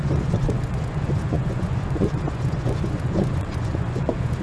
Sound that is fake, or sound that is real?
fake